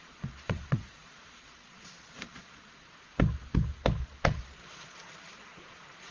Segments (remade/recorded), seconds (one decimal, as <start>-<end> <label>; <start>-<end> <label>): 0.0-3.1 remade; 3.1-4.0 recorded; 4.0-6.1 remade